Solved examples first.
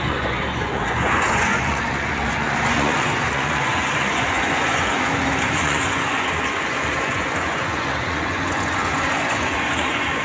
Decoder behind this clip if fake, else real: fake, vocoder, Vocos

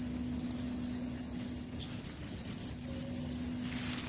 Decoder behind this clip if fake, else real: real